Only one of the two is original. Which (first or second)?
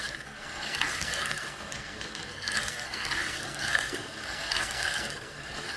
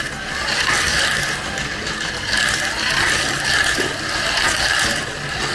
second